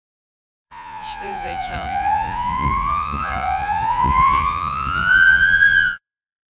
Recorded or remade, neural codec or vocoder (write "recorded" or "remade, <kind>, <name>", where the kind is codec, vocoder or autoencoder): remade, vocoder, Vocos